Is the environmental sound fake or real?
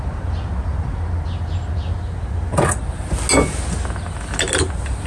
real